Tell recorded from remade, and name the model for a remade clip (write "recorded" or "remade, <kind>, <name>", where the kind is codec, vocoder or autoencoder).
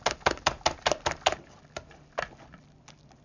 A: recorded